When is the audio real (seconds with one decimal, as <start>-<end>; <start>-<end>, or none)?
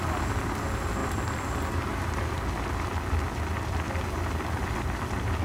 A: 0.0-5.4